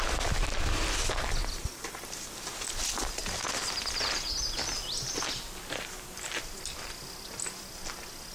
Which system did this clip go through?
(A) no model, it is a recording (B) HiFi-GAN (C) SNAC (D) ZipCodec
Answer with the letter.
A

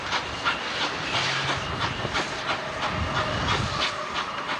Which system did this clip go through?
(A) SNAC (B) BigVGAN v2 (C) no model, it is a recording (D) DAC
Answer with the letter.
C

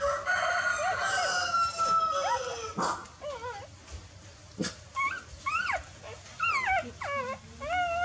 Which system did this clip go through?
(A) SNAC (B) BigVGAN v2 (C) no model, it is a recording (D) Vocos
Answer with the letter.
C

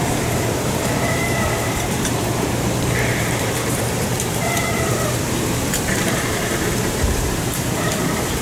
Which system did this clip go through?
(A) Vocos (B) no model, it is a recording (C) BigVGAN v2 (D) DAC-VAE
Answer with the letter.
C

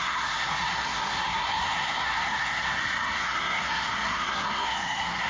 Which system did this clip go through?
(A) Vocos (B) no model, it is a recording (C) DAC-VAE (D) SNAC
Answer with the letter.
D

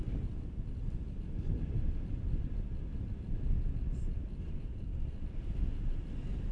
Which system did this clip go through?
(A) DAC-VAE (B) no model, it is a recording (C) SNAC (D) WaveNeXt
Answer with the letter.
B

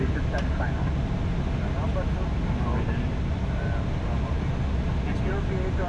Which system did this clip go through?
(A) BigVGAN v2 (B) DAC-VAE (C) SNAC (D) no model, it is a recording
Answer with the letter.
D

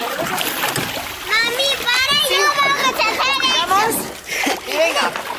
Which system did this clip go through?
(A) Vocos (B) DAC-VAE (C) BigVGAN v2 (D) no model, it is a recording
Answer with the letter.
D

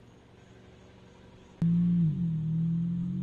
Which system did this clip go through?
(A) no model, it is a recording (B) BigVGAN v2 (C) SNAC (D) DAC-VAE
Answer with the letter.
A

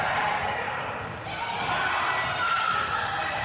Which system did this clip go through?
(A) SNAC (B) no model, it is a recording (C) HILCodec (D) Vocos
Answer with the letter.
B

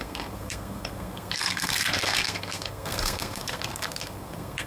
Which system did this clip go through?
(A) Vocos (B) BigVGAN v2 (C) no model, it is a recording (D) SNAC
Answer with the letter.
D